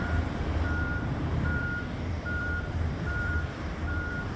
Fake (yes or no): yes